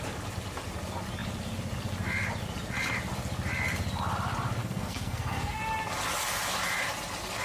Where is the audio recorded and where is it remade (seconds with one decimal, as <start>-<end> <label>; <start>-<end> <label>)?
0.0-4.6 recorded; 4.6-5.6 remade; 5.6-7.4 recorded

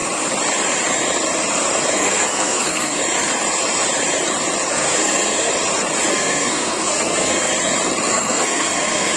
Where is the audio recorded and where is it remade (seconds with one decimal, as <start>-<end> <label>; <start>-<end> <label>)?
0.0-1.9 recorded; 1.9-3.0 remade; 3.0-4.7 recorded; 4.7-5.5 remade; 5.5-6.1 recorded; 6.1-7.5 remade; 7.5-8.1 recorded; 8.1-9.2 remade

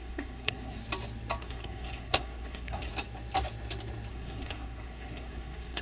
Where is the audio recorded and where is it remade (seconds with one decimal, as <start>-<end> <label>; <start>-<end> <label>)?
0.0-0.8 remade; 0.8-1.4 recorded; 1.4-2.9 remade; 2.9-4.1 recorded; 4.1-5.8 remade